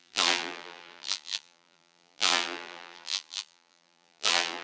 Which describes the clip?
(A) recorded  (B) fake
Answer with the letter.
B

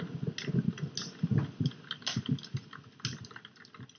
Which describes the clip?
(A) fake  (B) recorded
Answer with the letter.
B